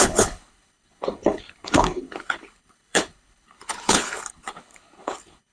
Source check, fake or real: fake